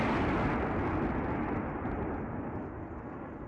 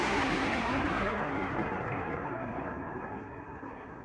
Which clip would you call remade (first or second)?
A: second